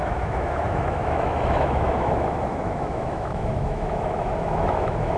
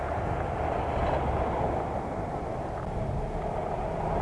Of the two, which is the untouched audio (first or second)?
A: second